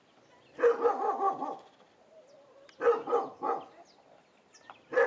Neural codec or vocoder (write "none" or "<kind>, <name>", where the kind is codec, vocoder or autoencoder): none